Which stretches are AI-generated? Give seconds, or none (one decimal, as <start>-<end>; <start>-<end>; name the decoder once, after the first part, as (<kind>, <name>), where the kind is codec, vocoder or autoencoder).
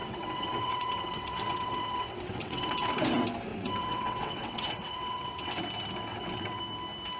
0.0-2.9 (vocoder, WaveNeXt); 3.5-5.6; 6.1-6.6